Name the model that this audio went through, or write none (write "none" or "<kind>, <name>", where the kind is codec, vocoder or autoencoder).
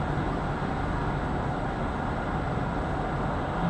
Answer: none